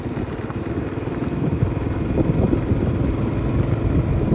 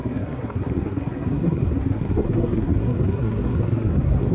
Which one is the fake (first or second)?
second